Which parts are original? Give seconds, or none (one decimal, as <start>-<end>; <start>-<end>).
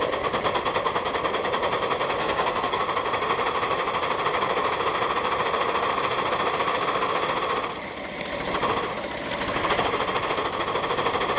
0.0-2.2; 2.8-11.4